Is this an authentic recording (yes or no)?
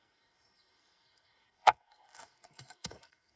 no